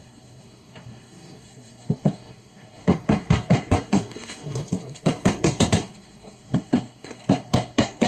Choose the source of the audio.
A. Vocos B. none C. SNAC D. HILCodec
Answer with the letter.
C